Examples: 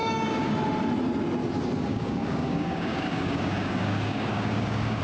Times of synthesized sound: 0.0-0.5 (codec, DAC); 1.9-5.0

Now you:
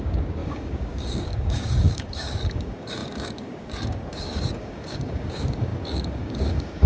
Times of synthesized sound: 0.0-6.9 (codec, DAC)